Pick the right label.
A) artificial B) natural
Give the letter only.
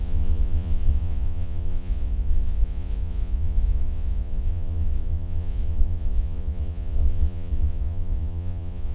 A